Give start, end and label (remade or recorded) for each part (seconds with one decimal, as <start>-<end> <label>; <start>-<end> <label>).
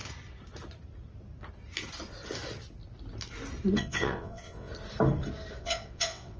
0.0-3.7 recorded; 3.7-4.7 remade; 4.7-5.6 recorded; 5.6-6.4 remade